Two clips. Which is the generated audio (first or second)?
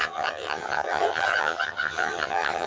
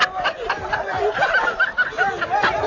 first